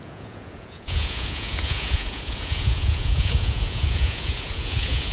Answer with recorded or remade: remade